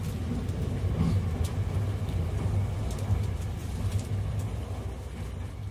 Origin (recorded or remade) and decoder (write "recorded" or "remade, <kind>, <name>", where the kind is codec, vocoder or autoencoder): recorded